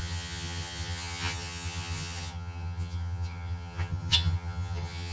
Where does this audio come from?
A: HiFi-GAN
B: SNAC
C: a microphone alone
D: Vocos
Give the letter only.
A